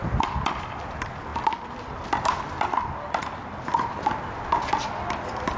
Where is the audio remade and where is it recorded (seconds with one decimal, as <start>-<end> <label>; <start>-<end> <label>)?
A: 0.0-5.6 recorded